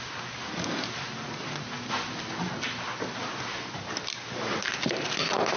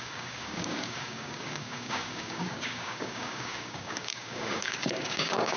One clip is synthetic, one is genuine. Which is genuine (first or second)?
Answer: first